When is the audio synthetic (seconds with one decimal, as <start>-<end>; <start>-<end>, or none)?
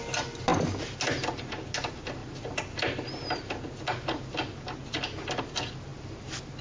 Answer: none